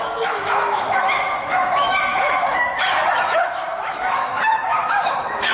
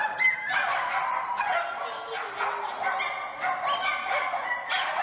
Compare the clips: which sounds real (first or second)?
second